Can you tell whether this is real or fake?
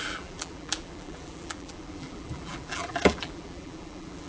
fake